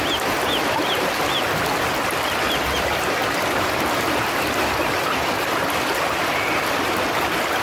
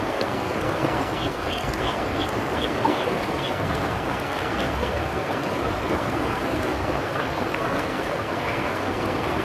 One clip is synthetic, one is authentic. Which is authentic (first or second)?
first